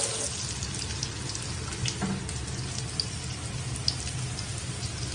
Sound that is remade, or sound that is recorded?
recorded